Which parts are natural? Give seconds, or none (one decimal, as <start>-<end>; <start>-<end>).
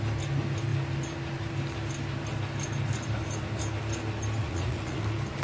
0.0-4.4; 5.0-5.4